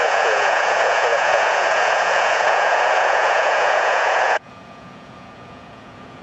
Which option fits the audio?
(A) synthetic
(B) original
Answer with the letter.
A